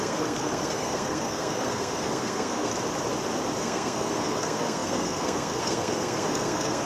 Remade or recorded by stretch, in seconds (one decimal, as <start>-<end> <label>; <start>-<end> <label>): 0.0-2.7 remade; 2.7-3.6 recorded; 3.6-6.9 remade